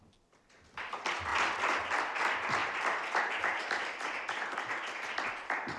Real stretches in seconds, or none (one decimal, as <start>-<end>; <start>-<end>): 0.0-5.8